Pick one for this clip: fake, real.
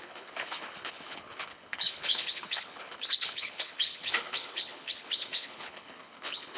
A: fake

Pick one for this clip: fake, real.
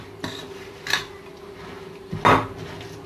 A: real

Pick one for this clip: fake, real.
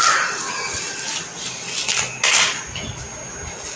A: real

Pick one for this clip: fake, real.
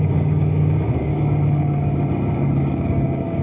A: fake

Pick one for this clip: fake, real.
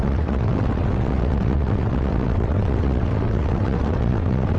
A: fake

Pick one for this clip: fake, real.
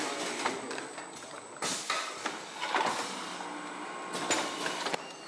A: real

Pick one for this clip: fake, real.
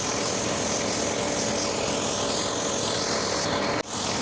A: real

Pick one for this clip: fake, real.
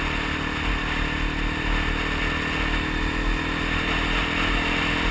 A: real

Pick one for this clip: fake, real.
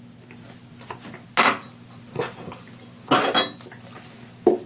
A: real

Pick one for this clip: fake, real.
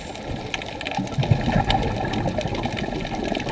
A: real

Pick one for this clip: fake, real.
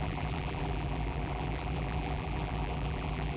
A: fake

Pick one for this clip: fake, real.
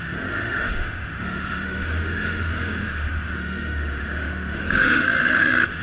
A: fake